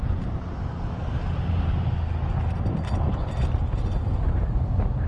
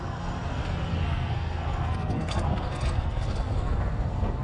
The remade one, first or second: second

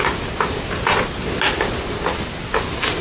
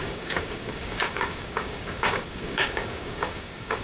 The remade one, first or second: second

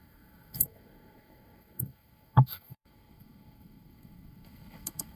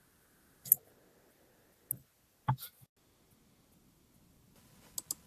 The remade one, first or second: first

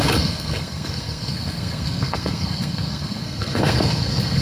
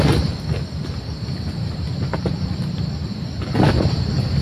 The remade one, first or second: first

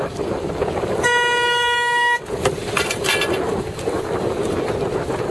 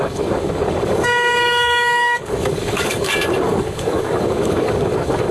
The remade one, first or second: second